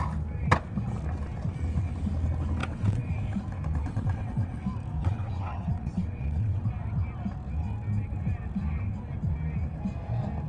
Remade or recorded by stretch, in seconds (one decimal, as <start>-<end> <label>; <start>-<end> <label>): 0.0-2.6 recorded; 2.6-3.1 remade; 3.1-3.8 recorded; 3.8-4.5 remade; 4.5-5.0 recorded; 5.0-6.7 remade; 6.7-10.5 recorded